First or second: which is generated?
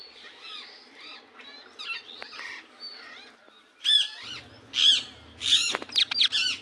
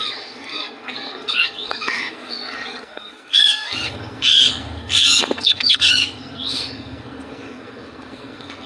second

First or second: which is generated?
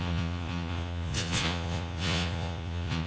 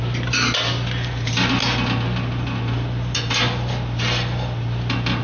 first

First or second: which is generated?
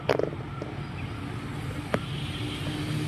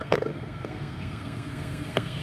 second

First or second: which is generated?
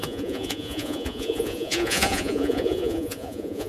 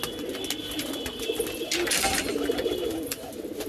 first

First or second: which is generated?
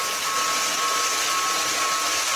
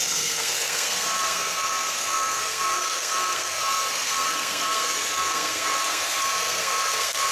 second